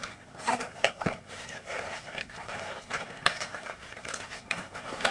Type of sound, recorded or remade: remade